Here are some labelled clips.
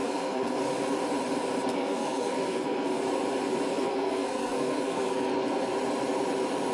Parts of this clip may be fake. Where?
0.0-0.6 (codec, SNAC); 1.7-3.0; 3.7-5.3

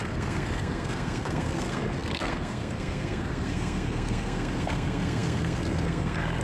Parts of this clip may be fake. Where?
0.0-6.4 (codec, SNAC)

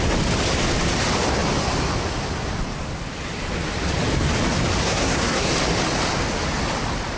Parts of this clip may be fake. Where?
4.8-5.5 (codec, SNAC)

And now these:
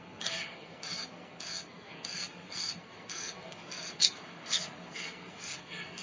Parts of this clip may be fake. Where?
0.0-6.0 (codec, SNAC)